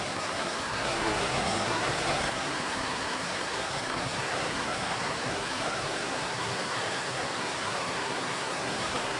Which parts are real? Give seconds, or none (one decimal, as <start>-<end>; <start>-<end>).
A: none